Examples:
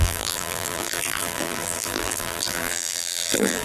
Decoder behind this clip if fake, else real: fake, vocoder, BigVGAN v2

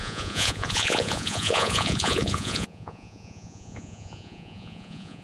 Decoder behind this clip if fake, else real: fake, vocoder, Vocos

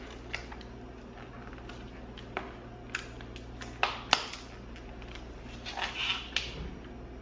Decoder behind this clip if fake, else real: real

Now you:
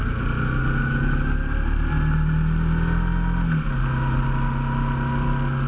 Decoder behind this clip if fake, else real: real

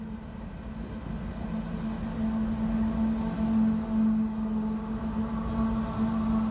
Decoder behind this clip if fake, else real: real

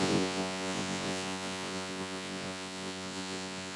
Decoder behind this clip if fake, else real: fake, vocoder, Vocos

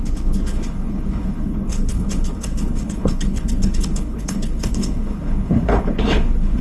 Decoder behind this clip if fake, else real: fake, codec, HILCodec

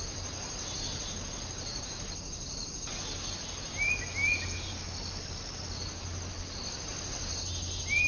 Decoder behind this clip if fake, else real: real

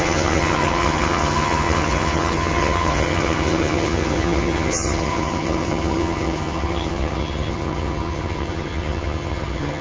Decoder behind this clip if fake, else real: fake, vocoder, HiFi-GAN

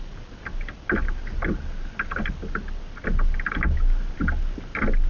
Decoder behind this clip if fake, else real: real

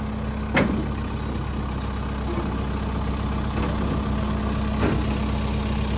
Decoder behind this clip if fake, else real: real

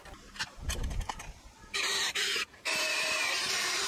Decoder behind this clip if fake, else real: fake, vocoder, BigVGAN v2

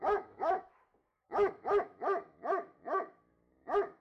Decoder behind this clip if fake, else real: fake, autoencoder, DAC-VAE